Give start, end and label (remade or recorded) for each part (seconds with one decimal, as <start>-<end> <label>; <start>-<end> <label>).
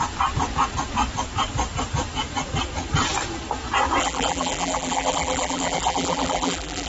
0.0-4.0 recorded; 4.0-6.9 remade